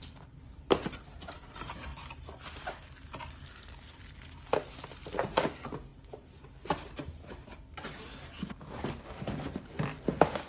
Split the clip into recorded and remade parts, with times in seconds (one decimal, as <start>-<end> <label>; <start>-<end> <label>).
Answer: 0.0-1.9 remade; 1.9-3.5 recorded; 3.5-5.9 remade; 5.9-9.5 recorded; 9.5-10.5 remade